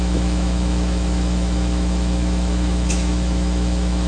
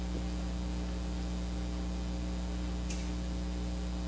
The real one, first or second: second